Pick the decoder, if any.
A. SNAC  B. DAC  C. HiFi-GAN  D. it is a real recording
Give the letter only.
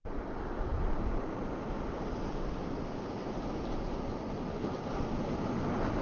D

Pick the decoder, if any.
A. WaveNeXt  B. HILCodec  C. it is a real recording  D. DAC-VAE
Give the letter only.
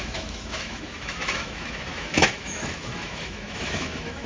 D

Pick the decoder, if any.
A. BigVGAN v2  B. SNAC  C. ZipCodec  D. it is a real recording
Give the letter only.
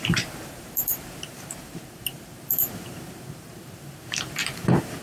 A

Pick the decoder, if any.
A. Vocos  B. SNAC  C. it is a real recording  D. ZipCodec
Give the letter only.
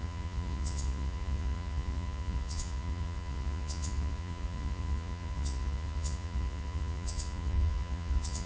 A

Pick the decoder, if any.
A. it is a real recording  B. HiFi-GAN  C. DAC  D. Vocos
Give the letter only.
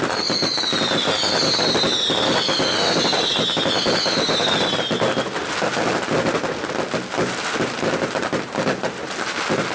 A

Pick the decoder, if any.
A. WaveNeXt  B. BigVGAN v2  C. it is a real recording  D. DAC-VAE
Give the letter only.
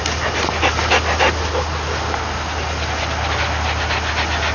C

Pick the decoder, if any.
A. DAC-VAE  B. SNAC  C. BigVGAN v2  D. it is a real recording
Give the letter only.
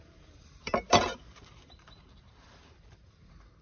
C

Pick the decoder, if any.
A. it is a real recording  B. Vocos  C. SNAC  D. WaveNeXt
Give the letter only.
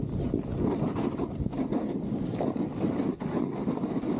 A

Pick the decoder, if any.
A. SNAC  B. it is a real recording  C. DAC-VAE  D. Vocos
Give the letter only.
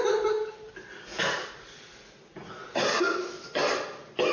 B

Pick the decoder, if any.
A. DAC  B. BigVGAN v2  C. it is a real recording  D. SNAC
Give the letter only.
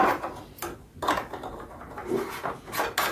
C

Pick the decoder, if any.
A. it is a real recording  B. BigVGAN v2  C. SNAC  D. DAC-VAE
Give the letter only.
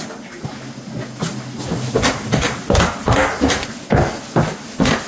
A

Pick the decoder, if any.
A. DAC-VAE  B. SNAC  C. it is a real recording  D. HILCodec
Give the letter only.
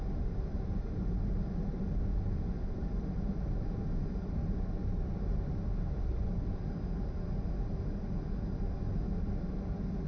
C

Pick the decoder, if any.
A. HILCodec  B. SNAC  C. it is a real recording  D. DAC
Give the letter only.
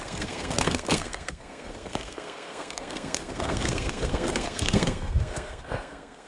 B